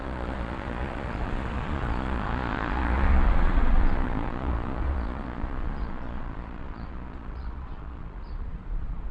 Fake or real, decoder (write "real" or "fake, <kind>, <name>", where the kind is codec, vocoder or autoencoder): fake, vocoder, Vocos